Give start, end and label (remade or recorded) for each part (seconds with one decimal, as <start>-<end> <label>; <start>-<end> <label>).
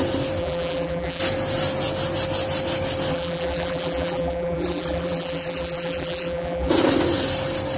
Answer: 0.0-0.4 recorded; 0.4-1.2 remade; 1.2-3.1 recorded; 3.1-6.7 remade; 6.7-7.8 recorded